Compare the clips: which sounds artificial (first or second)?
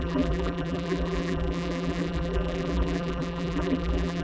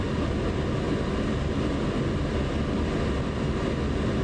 first